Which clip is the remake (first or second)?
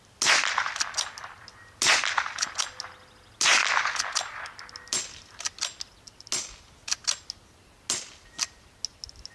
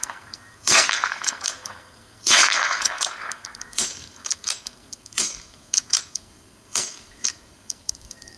second